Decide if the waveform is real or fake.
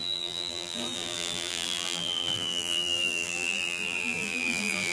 fake